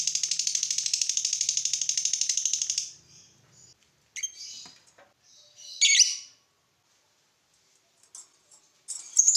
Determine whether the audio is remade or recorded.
recorded